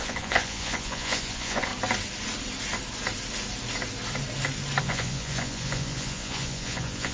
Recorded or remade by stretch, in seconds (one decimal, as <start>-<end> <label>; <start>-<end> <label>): 0.0-1.7 remade; 1.7-4.8 recorded; 4.8-7.1 remade